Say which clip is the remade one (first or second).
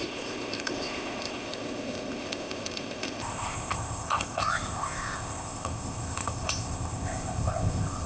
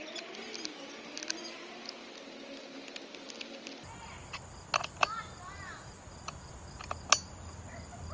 first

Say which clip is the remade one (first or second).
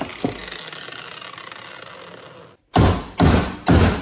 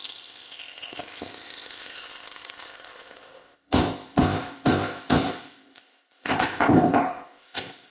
second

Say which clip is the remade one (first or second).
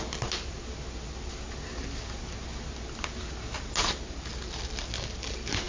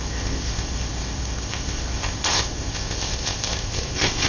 second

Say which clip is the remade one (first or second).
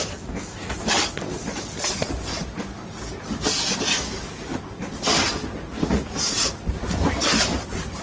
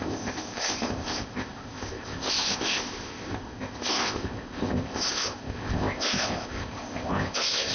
second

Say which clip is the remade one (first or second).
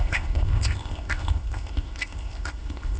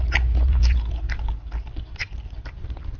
first